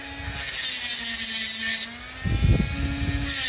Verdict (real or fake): real